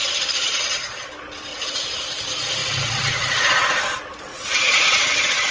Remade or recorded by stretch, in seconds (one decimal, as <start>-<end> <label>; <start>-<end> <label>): 0.0-1.5 recorded; 1.5-2.1 remade; 2.1-2.6 recorded; 2.6-3.8 remade; 3.8-4.3 recorded; 4.3-5.1 remade; 5.1-5.5 recorded